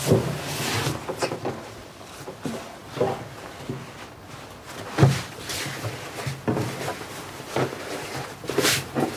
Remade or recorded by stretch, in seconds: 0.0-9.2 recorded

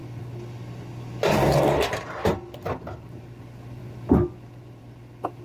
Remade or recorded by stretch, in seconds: 0.0-5.4 recorded

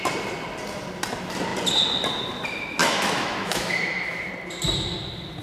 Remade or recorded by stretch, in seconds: 0.0-2.8 recorded; 2.8-4.3 remade; 4.3-5.4 recorded

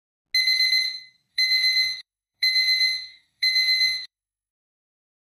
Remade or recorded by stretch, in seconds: 0.0-1.3 recorded; 1.3-4.5 remade; 4.5-5.3 recorded